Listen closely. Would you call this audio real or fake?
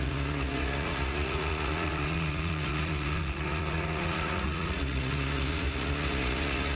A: fake